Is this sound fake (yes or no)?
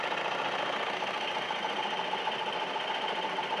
no